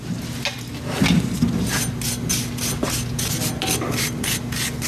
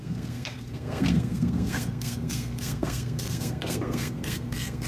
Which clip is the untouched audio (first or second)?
first